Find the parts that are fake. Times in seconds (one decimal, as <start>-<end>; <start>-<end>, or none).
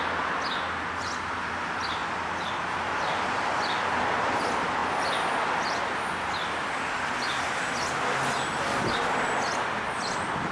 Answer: none